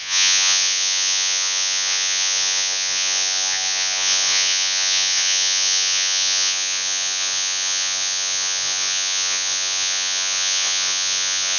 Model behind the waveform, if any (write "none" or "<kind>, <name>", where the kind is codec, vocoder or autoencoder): vocoder, Vocos